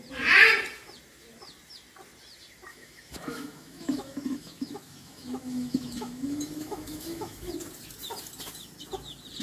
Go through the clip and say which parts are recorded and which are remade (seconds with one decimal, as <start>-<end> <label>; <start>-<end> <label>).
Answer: 0.0-2.7 recorded; 2.7-7.5 remade; 7.5-9.4 recorded